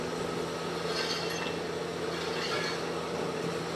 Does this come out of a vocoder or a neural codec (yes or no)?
no